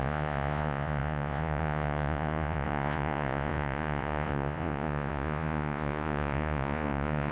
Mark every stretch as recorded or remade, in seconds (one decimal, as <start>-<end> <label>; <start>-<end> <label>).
0.0-7.3 remade